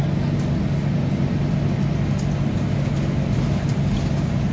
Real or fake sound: real